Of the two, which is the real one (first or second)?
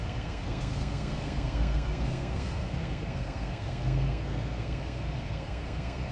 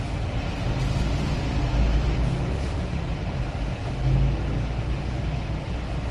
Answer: second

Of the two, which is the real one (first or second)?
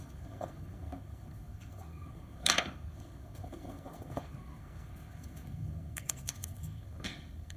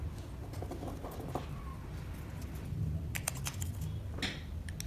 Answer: second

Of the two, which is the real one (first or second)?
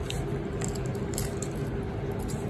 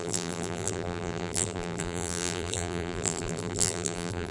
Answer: first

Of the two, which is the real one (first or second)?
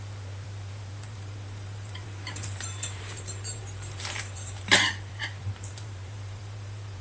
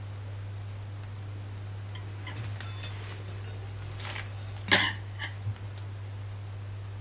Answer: second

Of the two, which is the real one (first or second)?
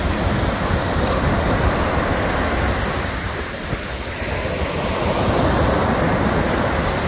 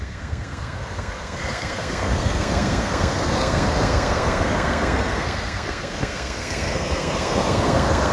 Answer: first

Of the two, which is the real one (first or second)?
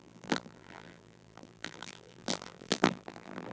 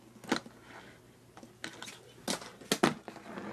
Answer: second